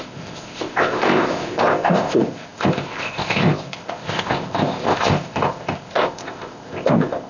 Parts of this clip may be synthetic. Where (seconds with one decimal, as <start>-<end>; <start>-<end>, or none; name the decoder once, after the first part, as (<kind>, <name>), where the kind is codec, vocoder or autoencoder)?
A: 0.0-7.3 (codec, ZipCodec)